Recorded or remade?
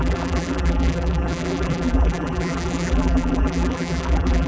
remade